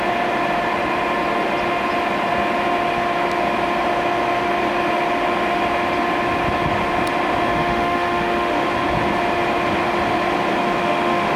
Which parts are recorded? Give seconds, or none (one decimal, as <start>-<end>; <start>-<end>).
0.0-7.5; 8.6-10.8